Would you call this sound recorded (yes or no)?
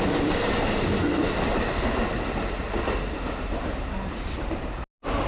yes